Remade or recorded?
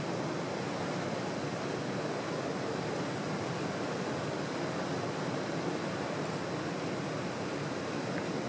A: recorded